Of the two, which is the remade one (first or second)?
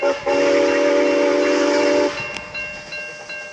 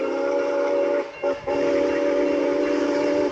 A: second